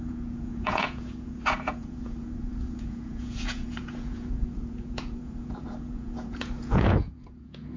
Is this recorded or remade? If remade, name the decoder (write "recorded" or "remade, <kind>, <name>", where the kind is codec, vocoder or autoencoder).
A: remade, vocoder, Vocos